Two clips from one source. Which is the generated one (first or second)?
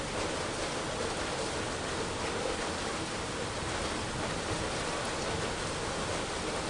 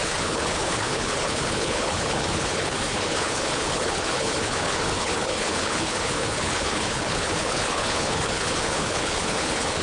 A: second